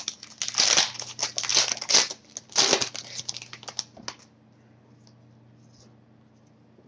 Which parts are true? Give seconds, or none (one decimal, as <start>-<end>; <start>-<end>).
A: 0.0-6.9